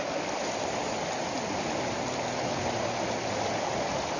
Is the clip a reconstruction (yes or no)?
no